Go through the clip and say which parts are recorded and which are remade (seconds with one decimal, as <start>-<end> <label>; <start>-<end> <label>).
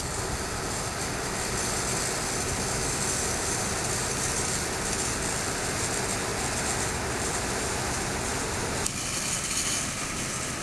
0.0-10.6 recorded